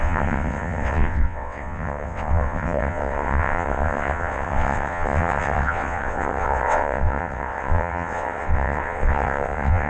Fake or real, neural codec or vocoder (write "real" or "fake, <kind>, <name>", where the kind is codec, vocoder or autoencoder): fake, vocoder, WaveNeXt